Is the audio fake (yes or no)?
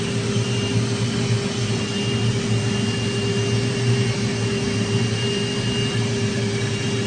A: no